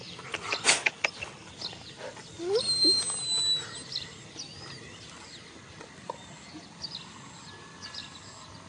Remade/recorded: recorded